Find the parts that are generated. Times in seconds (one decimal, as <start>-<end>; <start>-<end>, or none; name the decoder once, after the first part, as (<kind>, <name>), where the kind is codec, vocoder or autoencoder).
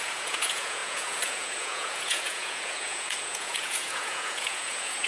0.0-5.1 (vocoder, Vocos)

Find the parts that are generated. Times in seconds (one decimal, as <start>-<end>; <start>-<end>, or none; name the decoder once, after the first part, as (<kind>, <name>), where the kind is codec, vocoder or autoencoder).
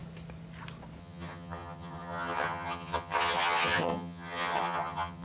1.0-5.2 (vocoder, HiFi-GAN)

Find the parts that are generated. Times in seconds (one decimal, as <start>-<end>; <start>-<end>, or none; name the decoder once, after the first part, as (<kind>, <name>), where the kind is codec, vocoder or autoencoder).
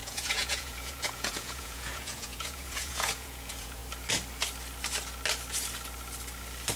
0.0-3.8 (vocoder, Vocos)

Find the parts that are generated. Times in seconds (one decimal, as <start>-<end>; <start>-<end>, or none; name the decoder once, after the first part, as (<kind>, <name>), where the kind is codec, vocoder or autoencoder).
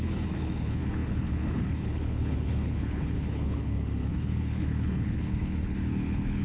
0.0-6.4 (codec, HILCodec)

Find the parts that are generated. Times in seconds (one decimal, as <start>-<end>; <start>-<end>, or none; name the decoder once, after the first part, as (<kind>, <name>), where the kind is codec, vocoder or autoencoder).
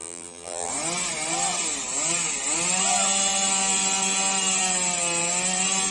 0.0-0.7 (vocoder, BigVGAN v2)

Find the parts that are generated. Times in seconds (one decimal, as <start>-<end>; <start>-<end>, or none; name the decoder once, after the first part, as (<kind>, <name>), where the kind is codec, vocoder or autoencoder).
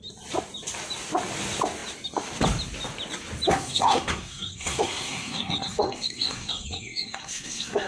3.5-7.9 (codec, SNAC)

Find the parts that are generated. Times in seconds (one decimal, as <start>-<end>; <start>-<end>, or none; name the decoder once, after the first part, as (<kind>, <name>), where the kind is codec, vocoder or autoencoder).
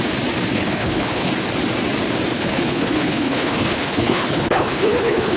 0.5-1.3 (codec, HILCodec); 2.3-5.4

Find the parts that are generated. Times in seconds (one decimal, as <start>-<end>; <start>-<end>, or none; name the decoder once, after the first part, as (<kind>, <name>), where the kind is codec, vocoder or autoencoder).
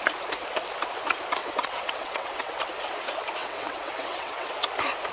1.4-2.5 (vocoder, WaveNeXt); 3.4-4.5